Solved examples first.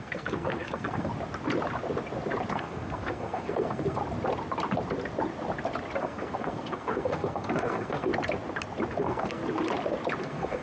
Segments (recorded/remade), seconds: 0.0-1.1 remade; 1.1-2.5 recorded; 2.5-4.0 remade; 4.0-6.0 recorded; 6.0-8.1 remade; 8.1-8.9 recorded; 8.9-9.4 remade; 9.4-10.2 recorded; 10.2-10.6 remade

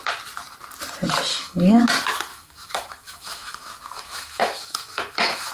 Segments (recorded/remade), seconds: 0.0-1.3 recorded; 1.3-1.8 remade; 1.8-2.3 recorded; 2.3-5.5 remade

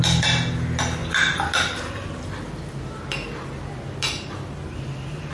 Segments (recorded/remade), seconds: 0.0-5.3 recorded